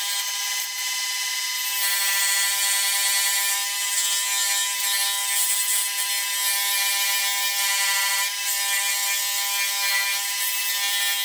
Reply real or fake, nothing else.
real